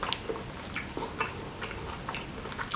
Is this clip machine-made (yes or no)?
no